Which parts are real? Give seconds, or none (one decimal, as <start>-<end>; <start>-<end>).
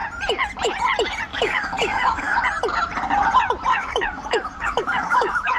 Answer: 0.0-1.3; 2.4-3.7